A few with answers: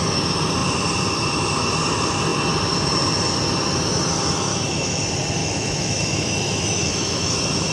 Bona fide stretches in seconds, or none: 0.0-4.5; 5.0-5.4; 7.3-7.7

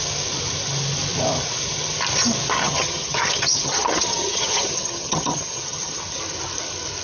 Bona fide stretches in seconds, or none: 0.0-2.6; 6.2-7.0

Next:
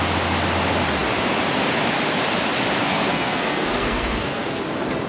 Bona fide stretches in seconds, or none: 0.0-2.8; 4.6-5.1